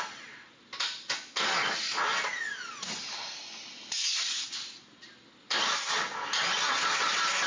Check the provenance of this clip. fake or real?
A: real